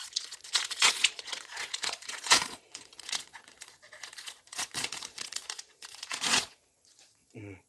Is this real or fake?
fake